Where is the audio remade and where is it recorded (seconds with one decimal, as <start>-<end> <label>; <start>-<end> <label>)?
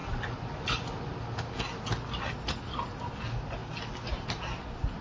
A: 0.0-5.0 recorded